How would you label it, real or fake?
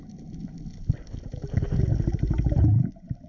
real